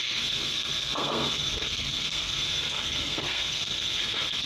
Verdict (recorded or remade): remade